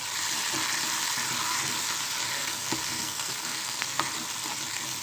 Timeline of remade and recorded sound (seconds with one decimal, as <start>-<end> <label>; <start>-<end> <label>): 0.0-2.3 recorded; 2.3-4.1 remade; 4.1-5.0 recorded